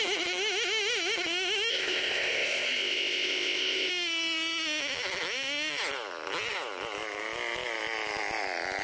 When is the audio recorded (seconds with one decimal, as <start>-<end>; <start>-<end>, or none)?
0.0-1.7; 3.9-8.8